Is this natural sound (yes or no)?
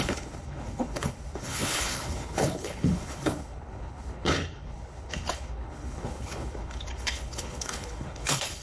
no